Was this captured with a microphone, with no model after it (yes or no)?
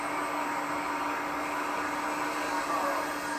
yes